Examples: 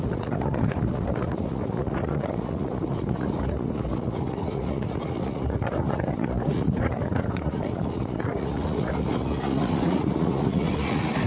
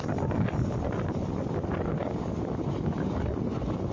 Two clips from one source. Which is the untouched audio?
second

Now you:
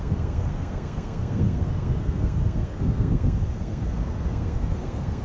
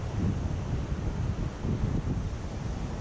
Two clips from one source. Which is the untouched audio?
second